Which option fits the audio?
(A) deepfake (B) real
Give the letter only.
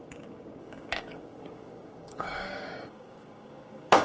A